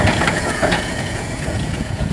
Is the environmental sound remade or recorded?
remade